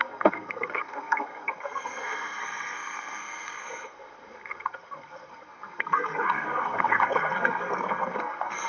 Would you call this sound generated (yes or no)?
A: yes